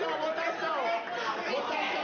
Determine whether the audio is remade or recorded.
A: recorded